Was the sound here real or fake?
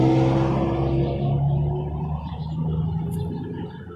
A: real